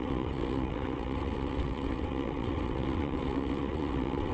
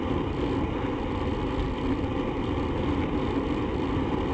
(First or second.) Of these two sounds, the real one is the second